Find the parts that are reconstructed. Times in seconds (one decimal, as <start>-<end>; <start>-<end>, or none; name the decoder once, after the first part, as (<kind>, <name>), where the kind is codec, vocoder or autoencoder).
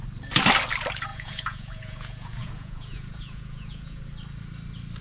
1.1-4.1 (vocoder, Vocos)